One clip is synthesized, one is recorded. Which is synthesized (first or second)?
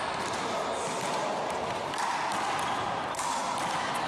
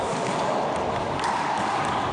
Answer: second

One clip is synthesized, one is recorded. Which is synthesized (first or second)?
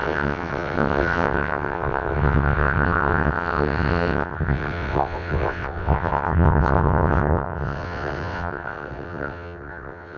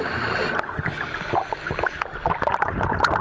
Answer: first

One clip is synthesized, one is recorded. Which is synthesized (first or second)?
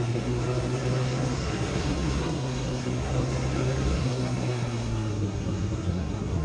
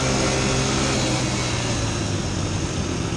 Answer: first